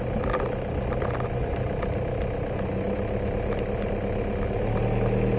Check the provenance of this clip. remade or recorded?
recorded